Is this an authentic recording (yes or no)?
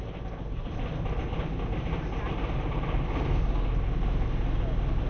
yes